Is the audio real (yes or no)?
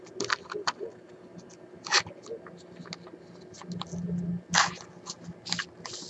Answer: yes